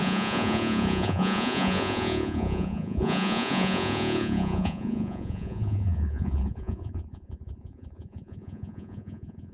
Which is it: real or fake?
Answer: fake